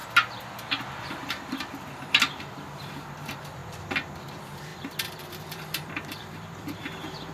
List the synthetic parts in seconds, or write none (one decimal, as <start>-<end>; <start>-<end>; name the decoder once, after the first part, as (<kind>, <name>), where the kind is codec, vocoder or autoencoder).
1.0-7.3 (vocoder, BigVGAN v2)